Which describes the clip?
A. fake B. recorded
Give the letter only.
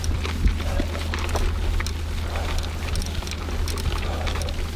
B